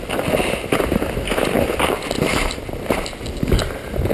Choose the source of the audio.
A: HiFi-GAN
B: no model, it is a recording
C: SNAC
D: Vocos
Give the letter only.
B